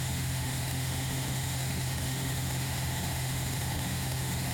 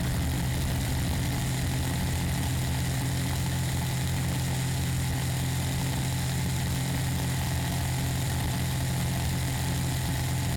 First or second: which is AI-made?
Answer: first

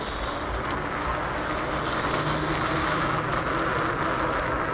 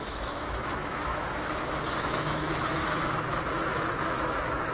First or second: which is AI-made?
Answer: second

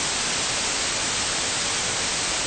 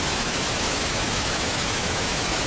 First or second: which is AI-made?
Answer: second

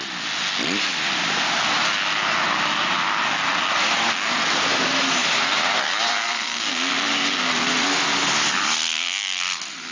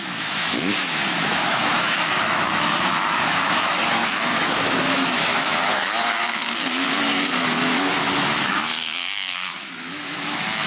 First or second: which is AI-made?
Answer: second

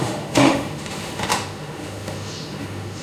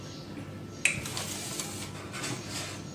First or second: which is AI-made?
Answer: first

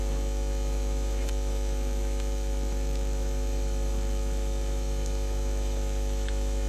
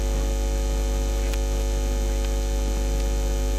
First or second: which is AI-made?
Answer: first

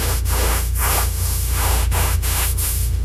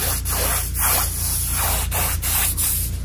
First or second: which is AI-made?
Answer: first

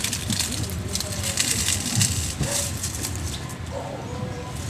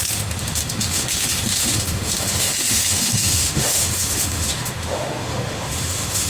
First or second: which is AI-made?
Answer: second